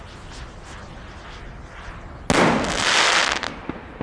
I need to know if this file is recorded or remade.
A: recorded